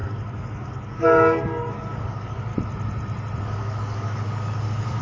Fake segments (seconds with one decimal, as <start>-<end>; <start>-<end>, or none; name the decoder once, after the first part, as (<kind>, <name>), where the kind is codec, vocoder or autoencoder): 0.0-2.5 (codec, DAC); 3.4-5.0